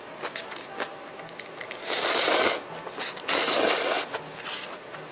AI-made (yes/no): no